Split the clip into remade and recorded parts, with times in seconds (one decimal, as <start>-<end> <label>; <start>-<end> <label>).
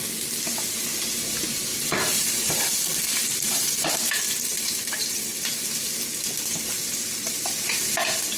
0.0-1.7 recorded; 1.7-5.9 remade; 5.9-8.4 recorded